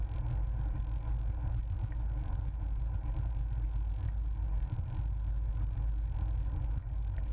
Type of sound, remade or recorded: recorded